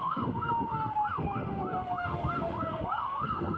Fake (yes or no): yes